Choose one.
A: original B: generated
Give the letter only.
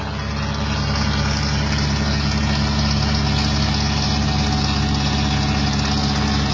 A